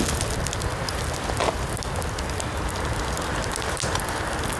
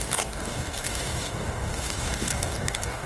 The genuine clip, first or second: first